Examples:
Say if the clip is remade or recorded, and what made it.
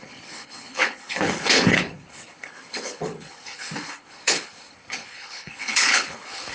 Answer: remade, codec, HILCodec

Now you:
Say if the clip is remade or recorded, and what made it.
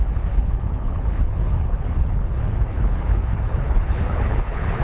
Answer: remade, codec, HILCodec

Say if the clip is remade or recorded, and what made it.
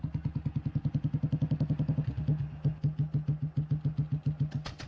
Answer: recorded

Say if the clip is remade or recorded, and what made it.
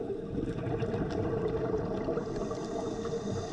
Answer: recorded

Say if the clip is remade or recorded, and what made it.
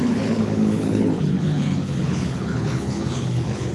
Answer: remade, codec, HILCodec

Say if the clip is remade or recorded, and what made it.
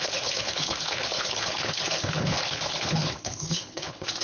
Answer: remade, codec, HILCodec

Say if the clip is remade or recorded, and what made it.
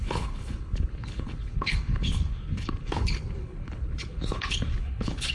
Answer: remade, codec, HILCodec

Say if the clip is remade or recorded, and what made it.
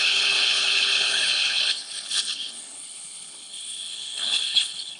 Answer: remade, codec, HILCodec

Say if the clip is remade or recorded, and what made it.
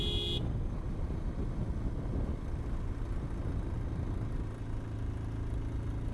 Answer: recorded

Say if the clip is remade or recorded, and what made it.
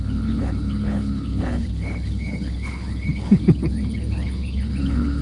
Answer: remade, codec, HILCodec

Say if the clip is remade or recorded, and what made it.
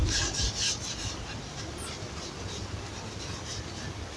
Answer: recorded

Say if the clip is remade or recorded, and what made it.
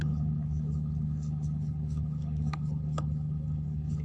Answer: remade, codec, HILCodec